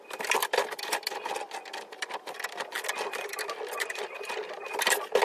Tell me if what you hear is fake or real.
real